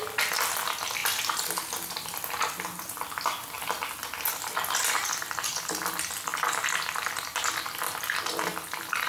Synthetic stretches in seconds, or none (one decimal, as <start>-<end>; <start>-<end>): none